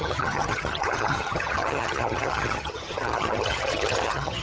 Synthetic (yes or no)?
yes